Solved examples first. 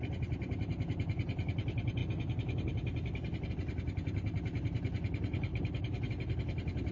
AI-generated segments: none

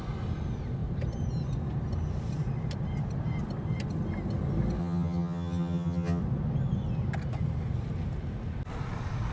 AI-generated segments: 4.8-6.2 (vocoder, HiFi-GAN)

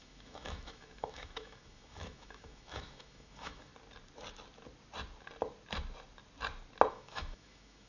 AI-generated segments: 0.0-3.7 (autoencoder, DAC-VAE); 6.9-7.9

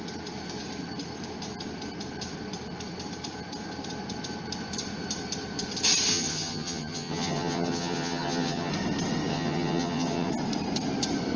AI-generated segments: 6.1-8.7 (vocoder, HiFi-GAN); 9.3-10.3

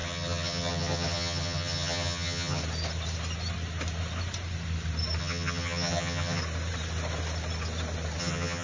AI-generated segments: 0.0-2.6 (vocoder, HiFi-GAN); 5.2-6.4; 8.2-8.6